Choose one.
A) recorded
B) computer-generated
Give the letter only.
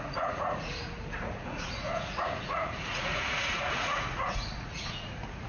B